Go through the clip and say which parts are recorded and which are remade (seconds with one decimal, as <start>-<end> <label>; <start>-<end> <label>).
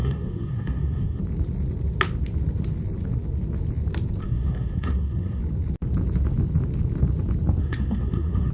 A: 0.0-1.2 remade; 1.2-4.2 recorded; 4.2-5.4 remade; 5.4-7.6 recorded; 7.6-8.5 remade